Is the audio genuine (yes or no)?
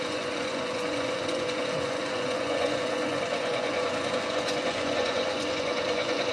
no